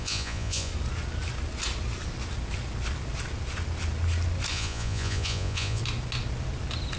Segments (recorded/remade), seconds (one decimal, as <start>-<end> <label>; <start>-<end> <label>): 0.0-0.7 remade; 0.7-4.5 recorded; 4.5-5.8 remade; 5.8-7.0 recorded